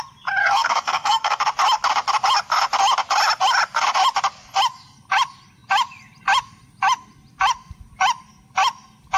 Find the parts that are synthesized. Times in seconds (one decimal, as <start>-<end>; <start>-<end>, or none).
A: 0.4-1.4